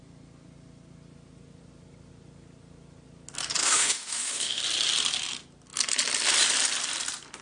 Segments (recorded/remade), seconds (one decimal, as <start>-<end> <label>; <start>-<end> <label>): 0.0-3.6 recorded; 3.6-4.6 remade; 4.6-7.4 recorded